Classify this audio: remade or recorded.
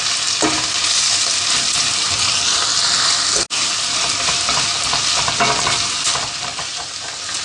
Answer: recorded